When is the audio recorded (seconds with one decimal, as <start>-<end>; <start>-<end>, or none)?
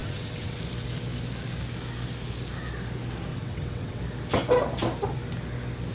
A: 0.6-3.3; 4.0-5.9